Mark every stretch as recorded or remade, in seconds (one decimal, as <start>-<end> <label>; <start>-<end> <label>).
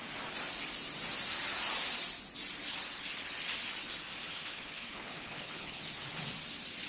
0.0-4.3 recorded; 4.3-5.8 remade; 5.8-6.9 recorded